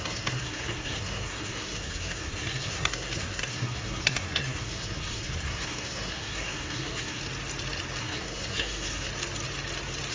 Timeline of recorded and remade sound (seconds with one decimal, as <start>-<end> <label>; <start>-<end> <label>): 0.0-7.2 remade; 7.2-8.0 recorded; 8.0-9.1 remade; 9.1-10.1 recorded